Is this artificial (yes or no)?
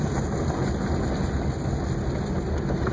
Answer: no